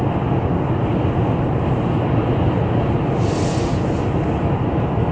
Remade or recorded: recorded